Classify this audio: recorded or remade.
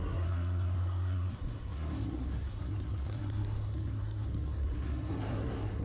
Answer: remade